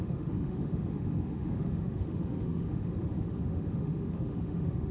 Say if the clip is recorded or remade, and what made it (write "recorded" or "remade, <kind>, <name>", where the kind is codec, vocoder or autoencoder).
remade, autoencoder, DAC-VAE